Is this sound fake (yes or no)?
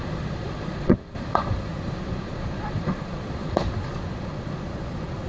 yes